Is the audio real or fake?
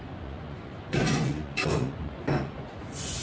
fake